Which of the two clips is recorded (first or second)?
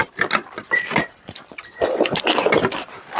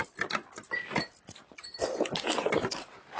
second